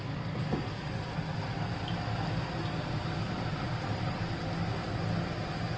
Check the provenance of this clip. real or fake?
real